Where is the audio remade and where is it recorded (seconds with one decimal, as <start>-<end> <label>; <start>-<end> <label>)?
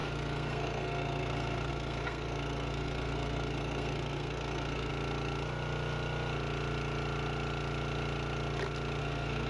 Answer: 0.0-4.9 remade; 4.9-9.0 recorded; 9.0-9.5 remade